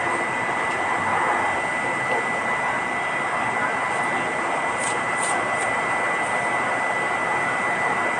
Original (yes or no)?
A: yes